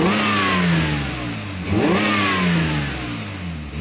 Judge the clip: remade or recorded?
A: recorded